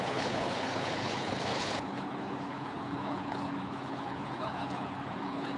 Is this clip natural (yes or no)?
no